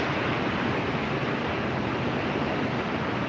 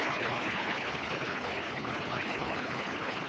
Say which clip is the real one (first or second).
first